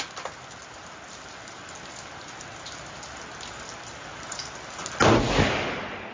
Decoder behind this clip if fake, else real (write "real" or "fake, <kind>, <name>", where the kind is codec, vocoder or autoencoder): real